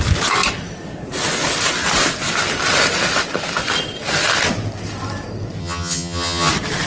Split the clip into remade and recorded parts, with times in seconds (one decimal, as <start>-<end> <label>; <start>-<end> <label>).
0.0-5.6 recorded; 5.6-6.5 remade; 6.5-6.9 recorded